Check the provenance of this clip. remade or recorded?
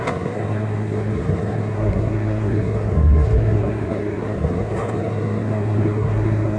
remade